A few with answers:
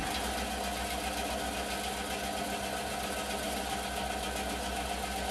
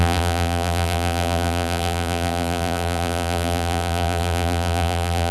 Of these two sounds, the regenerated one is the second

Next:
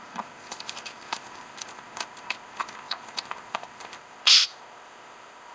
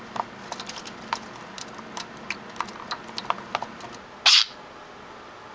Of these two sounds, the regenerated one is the first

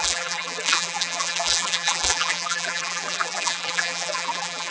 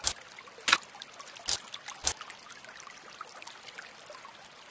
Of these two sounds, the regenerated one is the first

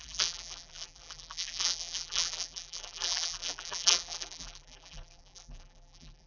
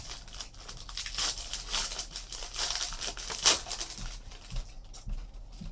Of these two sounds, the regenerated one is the first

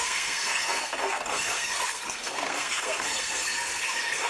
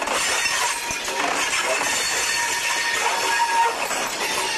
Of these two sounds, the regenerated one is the first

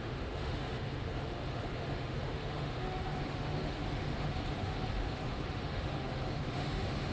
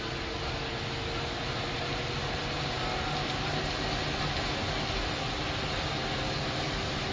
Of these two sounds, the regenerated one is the first